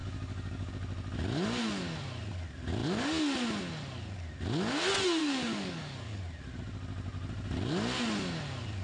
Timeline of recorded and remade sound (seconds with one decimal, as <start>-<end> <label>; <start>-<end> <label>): 0.0-0.7 remade; 0.7-5.2 recorded; 5.2-6.2 remade; 6.2-8.8 recorded